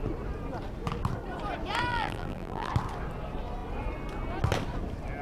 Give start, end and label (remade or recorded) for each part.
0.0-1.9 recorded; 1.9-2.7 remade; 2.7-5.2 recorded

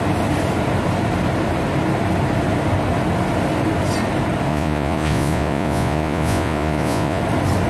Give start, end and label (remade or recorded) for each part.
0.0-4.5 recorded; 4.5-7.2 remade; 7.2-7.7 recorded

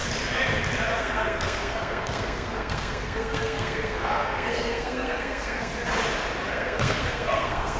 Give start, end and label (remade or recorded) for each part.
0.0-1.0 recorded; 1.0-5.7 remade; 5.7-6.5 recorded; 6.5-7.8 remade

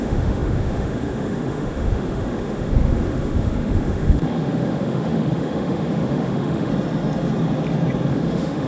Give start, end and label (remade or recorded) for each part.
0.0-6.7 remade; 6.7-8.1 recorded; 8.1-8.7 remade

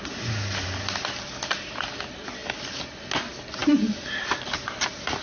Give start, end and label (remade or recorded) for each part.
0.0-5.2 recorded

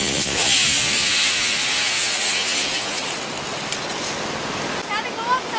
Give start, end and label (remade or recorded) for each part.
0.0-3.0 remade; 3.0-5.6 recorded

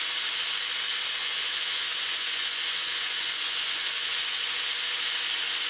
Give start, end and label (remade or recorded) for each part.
0.0-1.2 recorded; 1.2-4.6 remade; 4.6-5.7 recorded